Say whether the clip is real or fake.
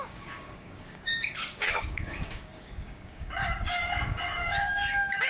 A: fake